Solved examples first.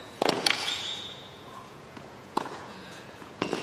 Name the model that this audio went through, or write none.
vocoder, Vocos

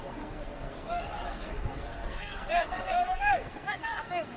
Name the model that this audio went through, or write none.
codec, SNAC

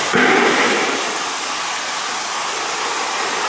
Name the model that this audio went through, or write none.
none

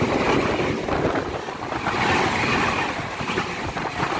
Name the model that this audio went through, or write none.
none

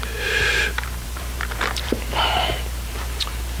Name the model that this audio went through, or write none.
vocoder, BigVGAN v2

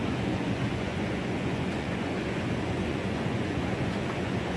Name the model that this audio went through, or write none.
vocoder, Vocos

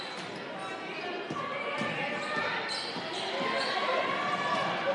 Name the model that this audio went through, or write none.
none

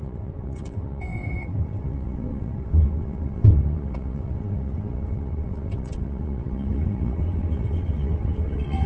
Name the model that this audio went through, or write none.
vocoder, WaveNeXt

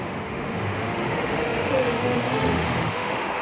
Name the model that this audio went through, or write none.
autoencoder, DAC-VAE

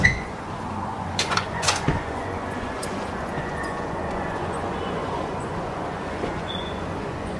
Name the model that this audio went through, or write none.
vocoder, Vocos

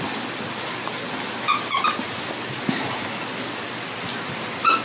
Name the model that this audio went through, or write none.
none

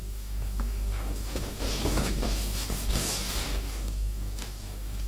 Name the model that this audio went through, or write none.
codec, DAC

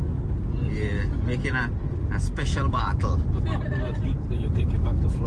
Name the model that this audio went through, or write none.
none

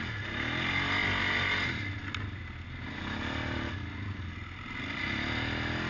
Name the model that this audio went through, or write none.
none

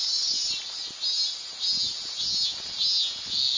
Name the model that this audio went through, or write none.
none